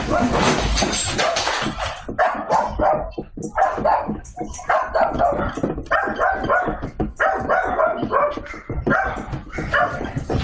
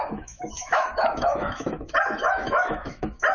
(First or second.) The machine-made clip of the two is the second